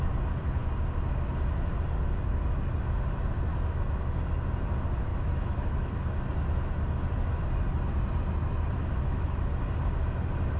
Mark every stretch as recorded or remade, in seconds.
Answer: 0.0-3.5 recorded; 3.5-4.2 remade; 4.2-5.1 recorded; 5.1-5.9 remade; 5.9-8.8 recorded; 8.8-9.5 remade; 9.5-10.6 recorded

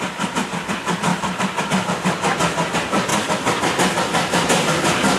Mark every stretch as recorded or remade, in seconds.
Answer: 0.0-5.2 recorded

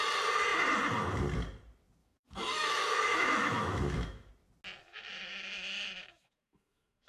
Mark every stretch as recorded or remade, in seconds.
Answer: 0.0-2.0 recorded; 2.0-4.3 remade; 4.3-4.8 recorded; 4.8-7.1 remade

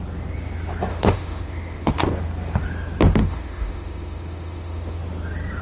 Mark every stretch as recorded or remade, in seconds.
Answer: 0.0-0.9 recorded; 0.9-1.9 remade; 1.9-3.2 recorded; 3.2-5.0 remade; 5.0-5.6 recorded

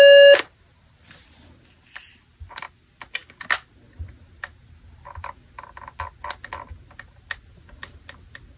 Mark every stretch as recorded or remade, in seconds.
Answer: 0.0-8.6 recorded

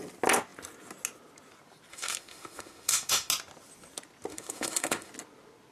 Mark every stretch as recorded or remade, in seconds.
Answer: 0.0-1.9 recorded; 1.9-3.3 remade; 3.3-4.3 recorded; 4.3-5.1 remade; 5.1-5.7 recorded